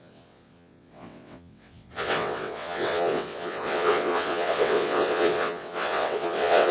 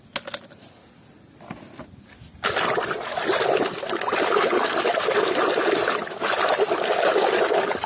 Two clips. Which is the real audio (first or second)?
second